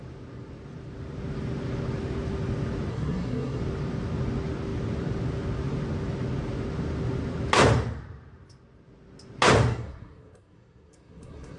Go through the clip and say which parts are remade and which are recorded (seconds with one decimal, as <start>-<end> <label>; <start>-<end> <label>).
0.0-2.9 recorded; 2.9-3.6 remade; 3.6-9.7 recorded; 9.7-11.6 remade